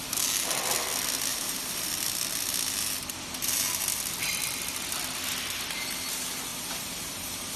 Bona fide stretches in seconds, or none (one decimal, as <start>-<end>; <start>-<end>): 0.0-1.3; 1.9-6.5